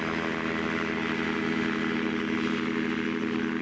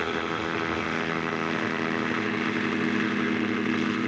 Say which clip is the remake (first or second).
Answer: second